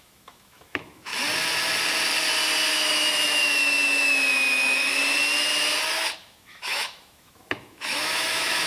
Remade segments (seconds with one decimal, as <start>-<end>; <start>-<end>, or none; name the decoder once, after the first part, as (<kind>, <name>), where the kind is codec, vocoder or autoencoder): 0.0-1.1 (autoencoder, DAC-VAE); 2.7-4.9; 6.2-8.7